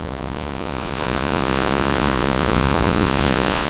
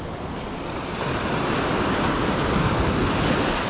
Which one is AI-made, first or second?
first